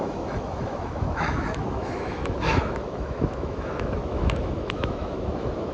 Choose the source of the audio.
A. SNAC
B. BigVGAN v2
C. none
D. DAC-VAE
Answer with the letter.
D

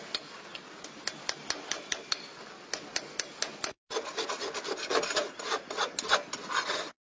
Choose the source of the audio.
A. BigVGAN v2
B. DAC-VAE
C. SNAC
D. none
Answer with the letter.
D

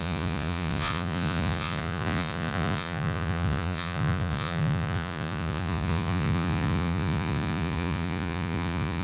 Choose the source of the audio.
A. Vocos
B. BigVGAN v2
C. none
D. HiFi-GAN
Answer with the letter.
A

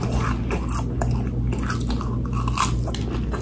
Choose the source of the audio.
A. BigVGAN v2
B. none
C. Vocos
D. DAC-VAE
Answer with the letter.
B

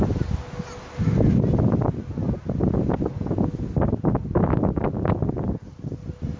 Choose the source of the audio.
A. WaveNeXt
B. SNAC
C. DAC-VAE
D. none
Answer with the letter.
D